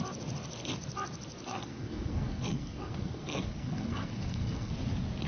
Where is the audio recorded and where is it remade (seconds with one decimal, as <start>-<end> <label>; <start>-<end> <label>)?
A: 0.0-1.5 recorded; 1.5-4.7 remade; 4.7-5.3 recorded